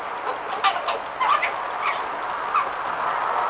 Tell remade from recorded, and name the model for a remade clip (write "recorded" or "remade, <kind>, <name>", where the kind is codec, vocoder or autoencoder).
recorded